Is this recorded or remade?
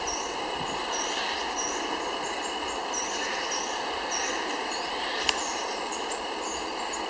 recorded